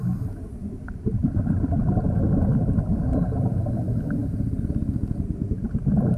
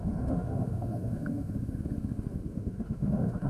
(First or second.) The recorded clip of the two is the first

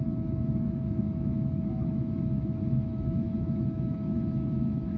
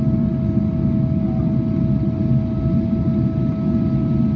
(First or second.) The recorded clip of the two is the second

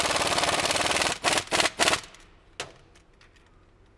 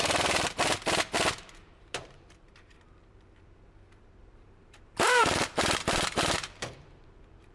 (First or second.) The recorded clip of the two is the first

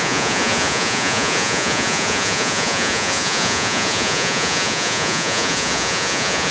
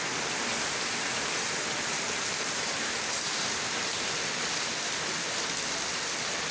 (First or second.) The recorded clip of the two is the second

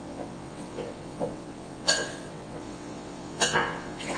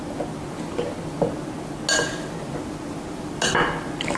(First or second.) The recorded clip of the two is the second